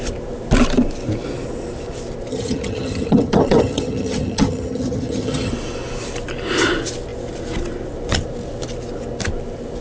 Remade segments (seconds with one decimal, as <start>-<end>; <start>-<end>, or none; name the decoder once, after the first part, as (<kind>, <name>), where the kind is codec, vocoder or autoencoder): 2.3-5.5 (vocoder, HiFi-GAN)